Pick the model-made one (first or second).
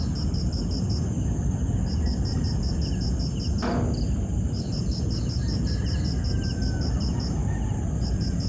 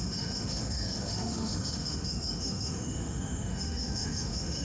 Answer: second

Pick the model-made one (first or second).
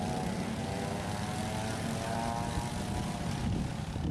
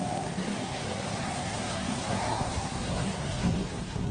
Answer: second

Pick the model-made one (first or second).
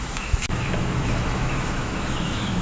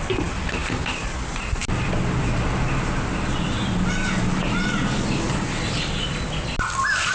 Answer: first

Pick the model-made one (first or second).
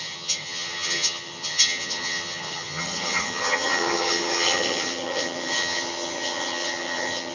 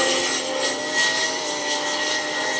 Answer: first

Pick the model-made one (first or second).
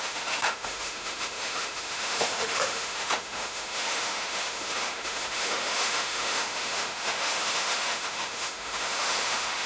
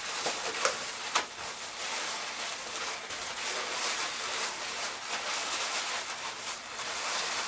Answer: first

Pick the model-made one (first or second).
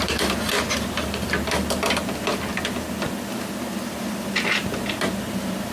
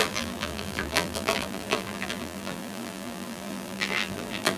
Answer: second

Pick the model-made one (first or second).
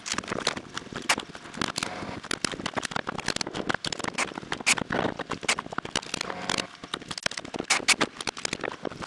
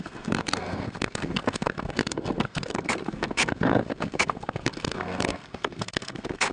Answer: second